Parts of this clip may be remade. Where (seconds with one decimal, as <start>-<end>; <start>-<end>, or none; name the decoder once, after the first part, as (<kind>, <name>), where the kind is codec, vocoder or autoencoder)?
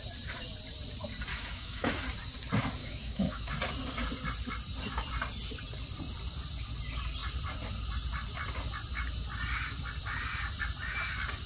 1.3-1.9 (autoencoder, DAC-VAE); 2.8-3.5